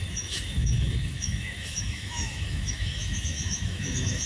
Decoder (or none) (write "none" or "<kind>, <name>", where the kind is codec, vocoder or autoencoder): autoencoder, DAC-VAE